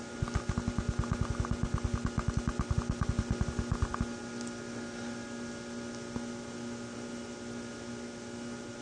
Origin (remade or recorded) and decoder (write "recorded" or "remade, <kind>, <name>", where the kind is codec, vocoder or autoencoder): recorded